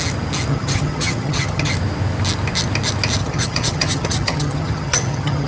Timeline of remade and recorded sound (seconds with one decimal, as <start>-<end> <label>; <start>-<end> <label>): 0.0-0.5 recorded; 0.5-1.7 remade; 1.7-3.2 recorded; 3.2-5.5 remade

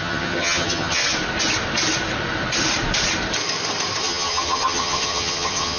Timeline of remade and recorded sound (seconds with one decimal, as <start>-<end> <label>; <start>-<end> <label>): 0.0-1.0 remade; 1.0-4.0 recorded; 4.0-5.8 remade